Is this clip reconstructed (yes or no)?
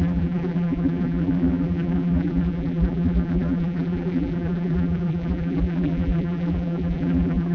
yes